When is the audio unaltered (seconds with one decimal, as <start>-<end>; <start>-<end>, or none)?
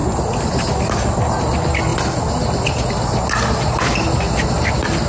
0.0-5.1